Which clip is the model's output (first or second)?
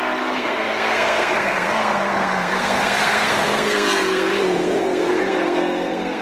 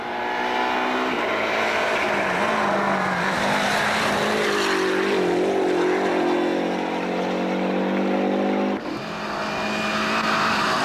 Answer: first